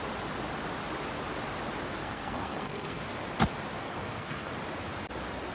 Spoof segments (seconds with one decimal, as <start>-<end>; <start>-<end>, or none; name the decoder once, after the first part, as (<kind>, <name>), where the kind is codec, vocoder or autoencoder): 2.0-3.0 (codec, SNAC); 3.8-4.5